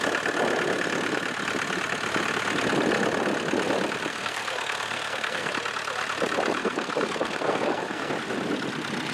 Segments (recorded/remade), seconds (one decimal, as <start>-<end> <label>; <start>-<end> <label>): 0.0-4.1 recorded; 4.1-5.5 remade; 5.5-6.6 recorded; 6.6-8.1 remade; 8.1-9.1 recorded